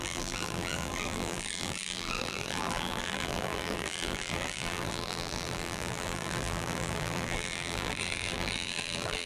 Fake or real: fake